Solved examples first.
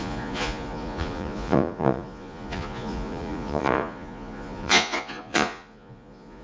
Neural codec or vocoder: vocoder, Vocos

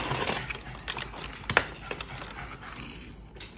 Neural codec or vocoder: none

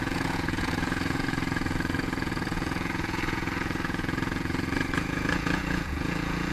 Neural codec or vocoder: vocoder, Vocos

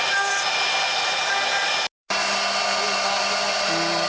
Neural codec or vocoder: none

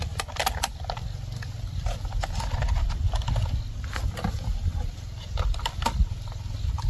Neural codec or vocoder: none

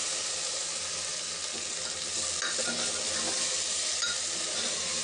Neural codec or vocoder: none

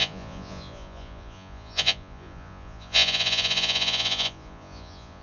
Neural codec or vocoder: vocoder, Vocos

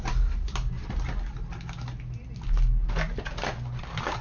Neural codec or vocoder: none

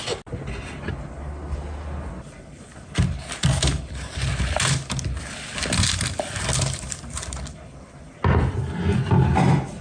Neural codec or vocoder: none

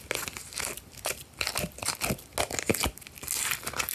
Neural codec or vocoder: none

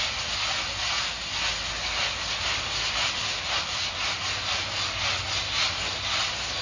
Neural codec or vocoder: none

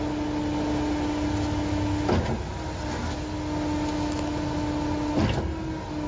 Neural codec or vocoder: none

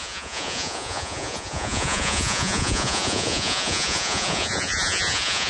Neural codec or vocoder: vocoder, Vocos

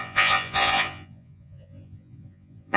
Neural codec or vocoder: vocoder, Vocos